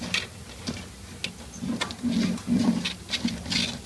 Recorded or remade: recorded